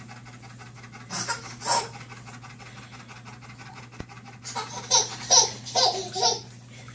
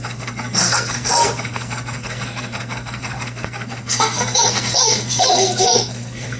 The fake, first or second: second